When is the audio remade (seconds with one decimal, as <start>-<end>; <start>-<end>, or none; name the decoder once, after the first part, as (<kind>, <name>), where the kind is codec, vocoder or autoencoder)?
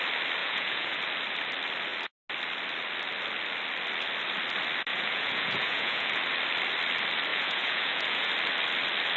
0.4-1.0 (vocoder, Vocos); 4.9-6.2; 7.3-8.3